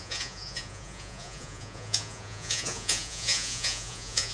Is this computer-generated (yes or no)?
yes